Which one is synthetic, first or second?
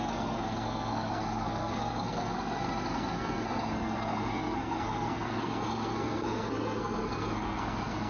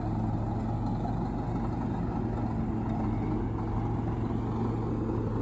first